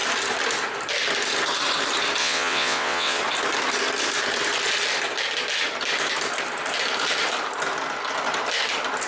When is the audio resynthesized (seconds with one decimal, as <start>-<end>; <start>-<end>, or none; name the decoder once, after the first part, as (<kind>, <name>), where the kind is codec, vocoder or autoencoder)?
2.2-3.2 (vocoder, WaveNeXt)